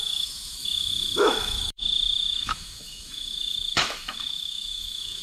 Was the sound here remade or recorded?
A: remade